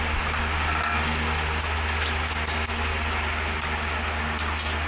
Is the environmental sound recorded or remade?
recorded